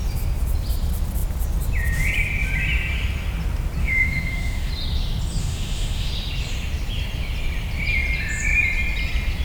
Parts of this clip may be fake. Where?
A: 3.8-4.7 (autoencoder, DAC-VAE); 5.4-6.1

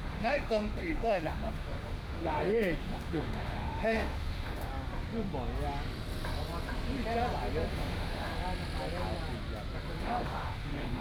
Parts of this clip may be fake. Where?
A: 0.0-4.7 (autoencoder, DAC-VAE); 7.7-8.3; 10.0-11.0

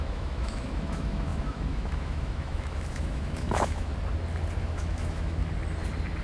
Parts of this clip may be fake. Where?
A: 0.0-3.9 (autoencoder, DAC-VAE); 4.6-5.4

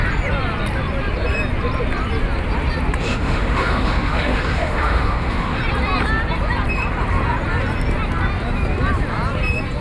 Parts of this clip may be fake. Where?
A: 3.0-5.6 (autoencoder, DAC-VAE)

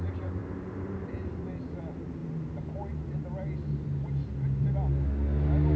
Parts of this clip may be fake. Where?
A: none

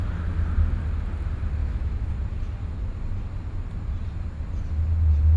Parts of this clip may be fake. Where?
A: 1.6-2.1 (autoencoder, DAC-VAE)

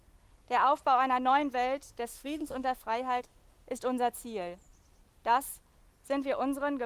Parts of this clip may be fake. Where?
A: 2.1-3.2 (autoencoder, DAC-VAE)

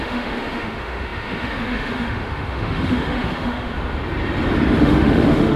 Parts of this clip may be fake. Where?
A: 0.0-3.7 (autoencoder, DAC-VAE); 4.8-5.6